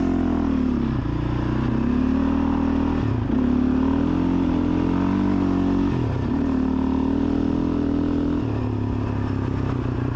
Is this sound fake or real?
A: real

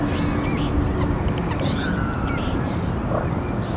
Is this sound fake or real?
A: real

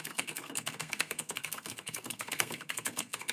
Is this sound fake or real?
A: fake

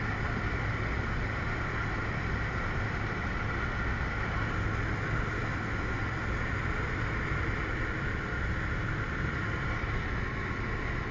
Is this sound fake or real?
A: real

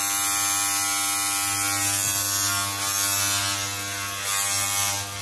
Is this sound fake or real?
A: real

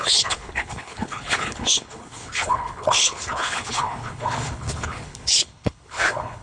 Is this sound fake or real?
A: fake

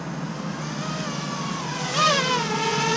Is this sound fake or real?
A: real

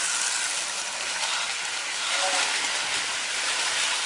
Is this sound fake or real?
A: real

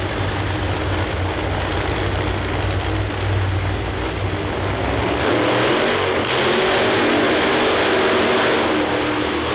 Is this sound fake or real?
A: real